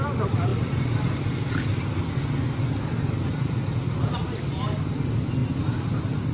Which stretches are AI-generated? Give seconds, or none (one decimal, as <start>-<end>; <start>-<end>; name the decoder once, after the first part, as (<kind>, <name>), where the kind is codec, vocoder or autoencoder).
0.5-1.2 (vocoder, BigVGAN v2); 5.4-6.3